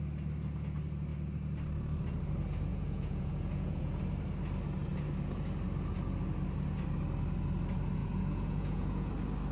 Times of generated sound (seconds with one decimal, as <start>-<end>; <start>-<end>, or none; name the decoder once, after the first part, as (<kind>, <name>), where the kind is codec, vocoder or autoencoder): 2.7-4.0 (vocoder, Vocos); 8.0-9.1